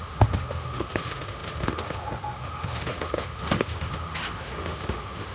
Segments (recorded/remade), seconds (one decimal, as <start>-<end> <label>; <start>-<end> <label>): 0.0-5.3 remade